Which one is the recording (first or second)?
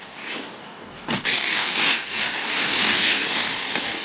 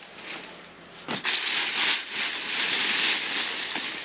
second